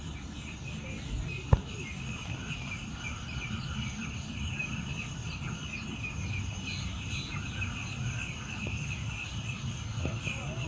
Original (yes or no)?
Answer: yes